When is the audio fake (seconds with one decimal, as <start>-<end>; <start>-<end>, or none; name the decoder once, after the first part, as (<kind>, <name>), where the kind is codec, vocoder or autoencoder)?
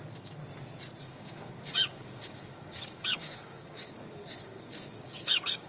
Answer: 0.0-0.4 (codec, DAC); 1.0-5.7